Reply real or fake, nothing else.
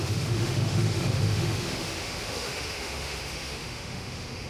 fake